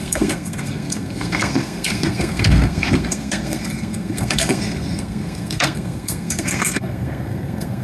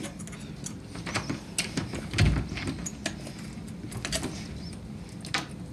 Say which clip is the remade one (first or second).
first